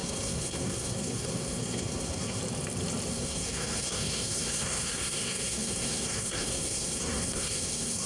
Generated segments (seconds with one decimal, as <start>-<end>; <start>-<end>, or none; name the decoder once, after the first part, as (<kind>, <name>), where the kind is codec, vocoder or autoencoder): 0.0-2.4 (codec, SNAC); 3.1-8.1